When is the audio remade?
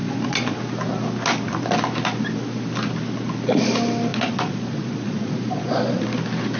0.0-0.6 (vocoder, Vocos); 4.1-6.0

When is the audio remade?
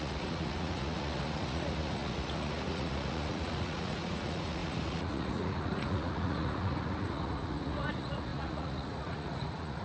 0.0-9.8 (vocoder, Vocos)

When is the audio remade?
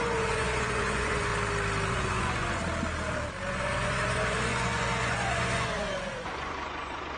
0.0-1.3 (vocoder, Vocos); 1.9-2.6; 3.5-7.2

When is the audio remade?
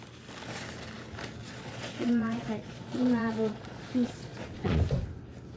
1.4-4.8 (vocoder, Vocos)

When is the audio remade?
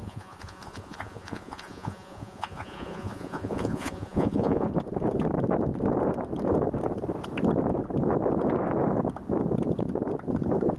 0.0-4.7 (vocoder, Vocos)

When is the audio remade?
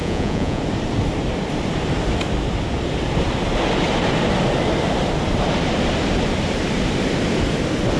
0.0-0.6 (vocoder, Vocos)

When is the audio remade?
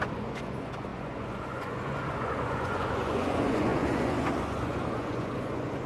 0.0-5.9 (vocoder, Vocos)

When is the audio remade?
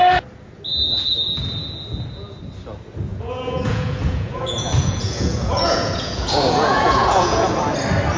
3.1-7.5 (vocoder, Vocos)